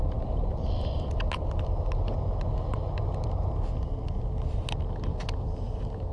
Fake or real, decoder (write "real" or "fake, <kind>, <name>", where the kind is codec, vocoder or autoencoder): real